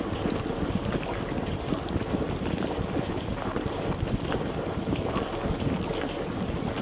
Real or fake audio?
real